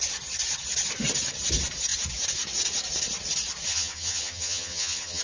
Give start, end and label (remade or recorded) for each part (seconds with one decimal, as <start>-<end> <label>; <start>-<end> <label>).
0.0-3.7 recorded; 3.7-5.2 remade